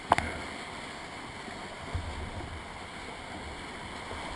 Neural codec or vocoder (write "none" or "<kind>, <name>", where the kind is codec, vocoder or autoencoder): none